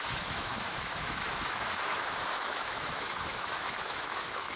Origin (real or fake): fake